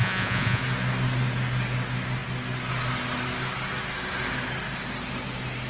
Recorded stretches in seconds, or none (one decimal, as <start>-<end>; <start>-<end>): 0.6-5.7

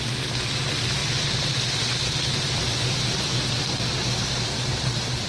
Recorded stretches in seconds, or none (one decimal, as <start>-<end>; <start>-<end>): 0.0-5.3

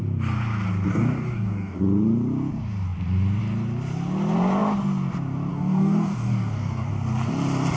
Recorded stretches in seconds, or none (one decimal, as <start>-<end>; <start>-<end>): 0.0-0.9; 1.8-5.5; 6.9-7.8

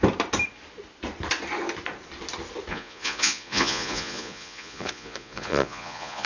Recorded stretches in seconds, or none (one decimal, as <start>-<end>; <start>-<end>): 0.0-2.7